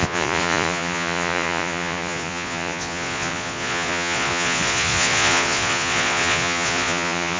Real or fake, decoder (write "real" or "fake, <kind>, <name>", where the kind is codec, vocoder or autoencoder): fake, vocoder, Vocos